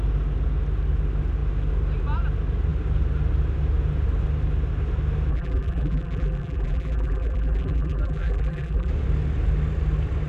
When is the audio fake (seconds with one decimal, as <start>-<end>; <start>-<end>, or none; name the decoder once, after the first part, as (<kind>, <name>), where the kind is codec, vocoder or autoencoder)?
5.3-8.9 (vocoder, BigVGAN v2)